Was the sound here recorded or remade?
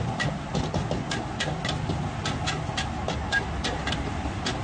recorded